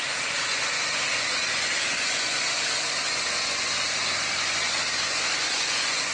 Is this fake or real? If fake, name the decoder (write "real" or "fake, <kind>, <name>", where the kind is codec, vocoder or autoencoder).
fake, vocoder, Vocos